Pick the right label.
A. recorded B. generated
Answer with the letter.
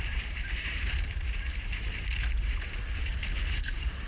B